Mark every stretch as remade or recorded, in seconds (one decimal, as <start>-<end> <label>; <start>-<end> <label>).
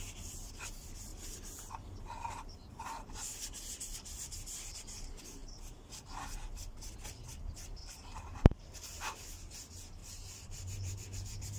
0.0-5.4 recorded; 5.4-5.9 remade; 5.9-10.0 recorded; 10.0-11.6 remade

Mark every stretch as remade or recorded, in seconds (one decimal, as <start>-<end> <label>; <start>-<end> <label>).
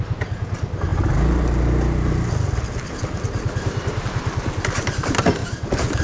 0.0-5.4 recorded; 5.4-6.0 remade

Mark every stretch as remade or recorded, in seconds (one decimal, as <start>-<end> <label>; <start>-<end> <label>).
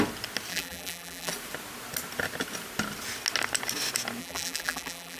0.0-0.5 recorded; 0.5-1.3 remade; 1.3-4.2 recorded; 4.2-5.2 remade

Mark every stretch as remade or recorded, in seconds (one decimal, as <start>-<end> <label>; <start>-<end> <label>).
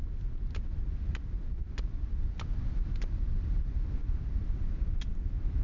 0.0-5.6 recorded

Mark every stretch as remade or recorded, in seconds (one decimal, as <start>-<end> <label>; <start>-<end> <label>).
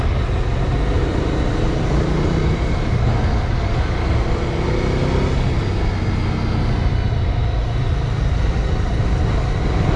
0.0-1.1 recorded; 1.1-2.9 remade; 2.9-10.0 recorded